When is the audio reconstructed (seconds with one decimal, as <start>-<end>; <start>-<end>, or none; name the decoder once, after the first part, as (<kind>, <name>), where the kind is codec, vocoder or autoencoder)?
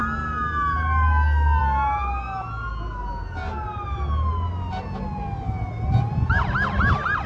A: none